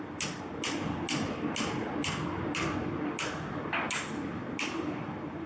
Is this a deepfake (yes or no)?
no